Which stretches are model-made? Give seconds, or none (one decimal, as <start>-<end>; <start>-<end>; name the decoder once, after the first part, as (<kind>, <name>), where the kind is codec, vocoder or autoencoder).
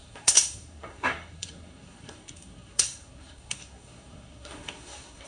0.0-5.3 (codec, SNAC)